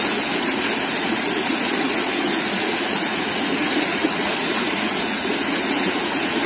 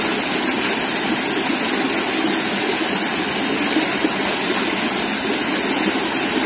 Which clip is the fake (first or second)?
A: first